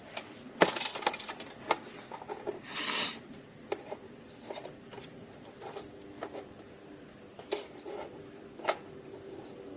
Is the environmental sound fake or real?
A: real